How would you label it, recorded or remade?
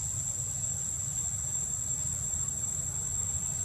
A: recorded